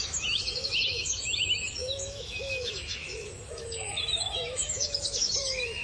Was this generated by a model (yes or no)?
yes